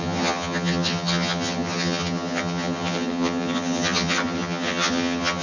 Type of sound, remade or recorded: remade